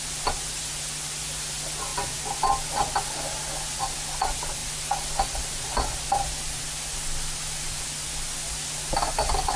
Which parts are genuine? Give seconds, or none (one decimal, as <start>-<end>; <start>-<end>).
0.0-9.6